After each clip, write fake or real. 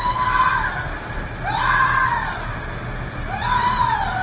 real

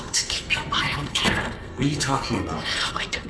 fake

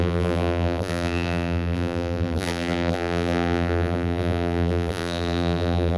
fake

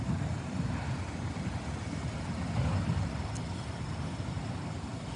real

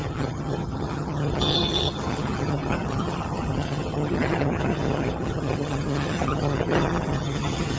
fake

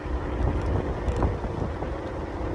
real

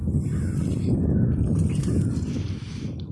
real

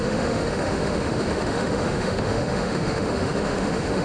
fake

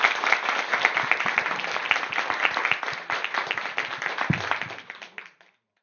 real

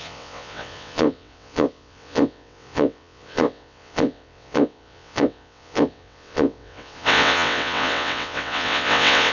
fake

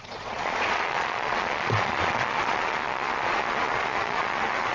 fake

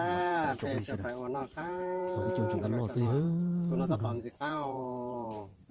fake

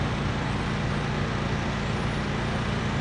real